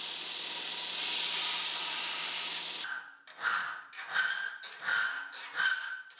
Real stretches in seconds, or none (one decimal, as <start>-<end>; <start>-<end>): 0.0-6.2